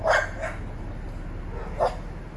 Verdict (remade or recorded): recorded